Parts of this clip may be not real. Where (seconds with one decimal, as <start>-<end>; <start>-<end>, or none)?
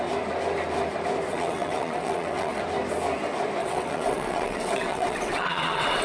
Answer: 1.3-2.6; 3.6-6.0